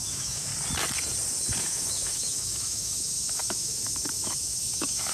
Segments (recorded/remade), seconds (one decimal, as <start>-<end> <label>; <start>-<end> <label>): 0.0-0.5 remade; 0.5-1.6 recorded; 1.6-5.1 remade

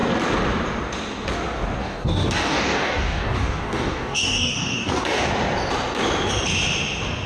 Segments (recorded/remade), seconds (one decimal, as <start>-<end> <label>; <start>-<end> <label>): 0.0-1.8 recorded; 1.8-5.3 remade; 5.3-7.3 recorded

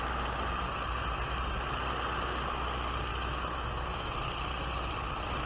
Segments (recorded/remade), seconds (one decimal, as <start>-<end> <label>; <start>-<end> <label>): 0.0-3.1 recorded; 3.1-4.1 remade; 4.1-5.5 recorded

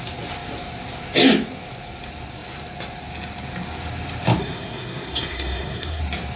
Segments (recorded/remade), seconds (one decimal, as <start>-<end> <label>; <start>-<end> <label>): 0.0-4.4 recorded; 4.4-6.0 remade; 6.0-6.4 recorded

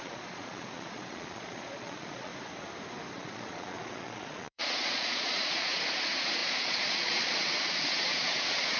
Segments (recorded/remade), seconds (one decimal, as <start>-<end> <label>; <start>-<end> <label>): 0.0-2.3 remade; 2.3-3.1 recorded; 3.1-8.8 remade

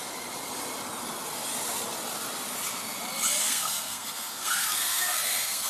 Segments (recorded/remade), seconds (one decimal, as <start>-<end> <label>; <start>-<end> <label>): 0.0-3.4 recorded; 3.4-5.7 remade

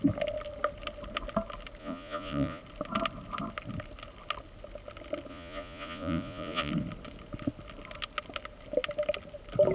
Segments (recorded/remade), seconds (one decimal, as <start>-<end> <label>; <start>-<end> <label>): 0.0-1.8 recorded; 1.8-2.6 remade; 2.6-5.3 recorded; 5.3-6.7 remade; 6.7-9.7 recorded

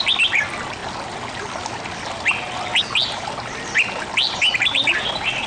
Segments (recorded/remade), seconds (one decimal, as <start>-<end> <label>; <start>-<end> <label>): 0.0-5.5 recorded